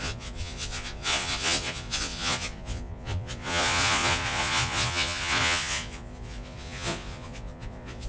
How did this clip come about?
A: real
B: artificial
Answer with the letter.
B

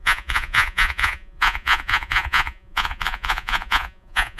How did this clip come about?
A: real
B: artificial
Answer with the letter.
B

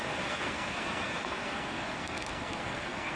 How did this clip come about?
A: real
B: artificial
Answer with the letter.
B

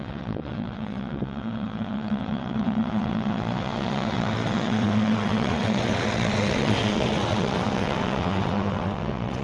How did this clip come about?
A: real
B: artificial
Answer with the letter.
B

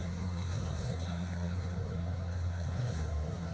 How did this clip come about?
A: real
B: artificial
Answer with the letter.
B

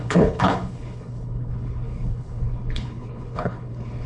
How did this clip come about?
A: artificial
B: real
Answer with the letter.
A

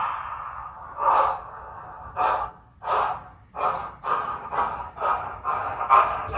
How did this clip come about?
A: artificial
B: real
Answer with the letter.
B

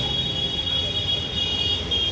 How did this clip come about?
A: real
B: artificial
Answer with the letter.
A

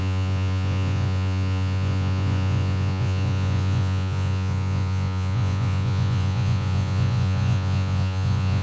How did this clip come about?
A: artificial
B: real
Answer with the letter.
A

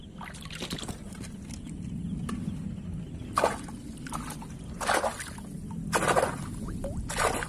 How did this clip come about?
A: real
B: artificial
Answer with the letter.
A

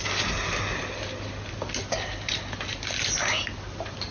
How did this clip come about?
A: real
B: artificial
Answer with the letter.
A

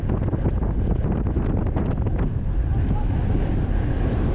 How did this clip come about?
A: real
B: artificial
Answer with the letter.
A